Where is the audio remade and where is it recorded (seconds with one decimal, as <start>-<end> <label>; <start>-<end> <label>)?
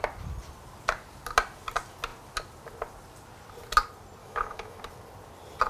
0.0-4.2 recorded; 4.2-4.8 remade; 4.8-5.7 recorded